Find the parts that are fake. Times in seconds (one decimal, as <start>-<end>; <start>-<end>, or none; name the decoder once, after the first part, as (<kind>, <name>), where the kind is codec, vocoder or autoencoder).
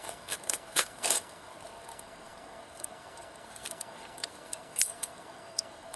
0.0-6.0 (codec, SNAC)